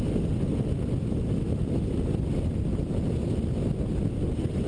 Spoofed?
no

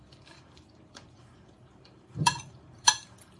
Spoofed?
yes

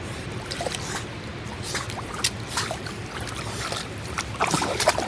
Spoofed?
no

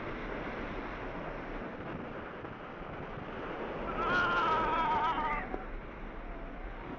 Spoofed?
no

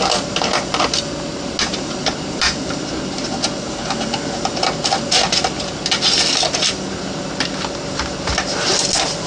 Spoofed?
no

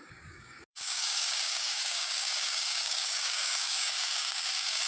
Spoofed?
yes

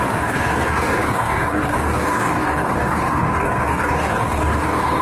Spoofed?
yes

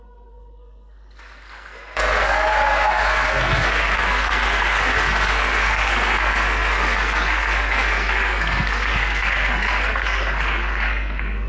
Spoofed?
yes